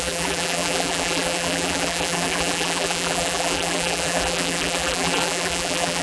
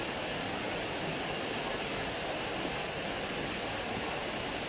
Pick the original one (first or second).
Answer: second